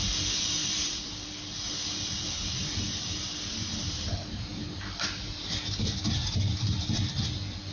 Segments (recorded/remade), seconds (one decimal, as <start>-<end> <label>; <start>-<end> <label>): 0.0-0.6 recorded; 0.6-1.7 remade; 1.7-2.6 recorded; 2.6-4.0 remade; 4.0-7.7 recorded